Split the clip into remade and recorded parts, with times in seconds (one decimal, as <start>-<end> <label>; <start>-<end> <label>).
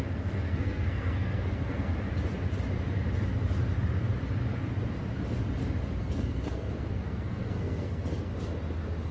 0.0-1.9 remade; 1.9-6.0 recorded; 6.0-8.3 remade; 8.3-9.1 recorded